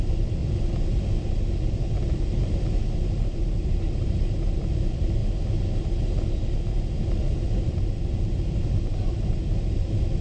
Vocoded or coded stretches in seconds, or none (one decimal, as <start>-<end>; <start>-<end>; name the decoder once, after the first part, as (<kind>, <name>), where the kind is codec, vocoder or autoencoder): 0.0-0.4 (vocoder, BigVGAN v2); 2.8-5.2; 7.6-10.2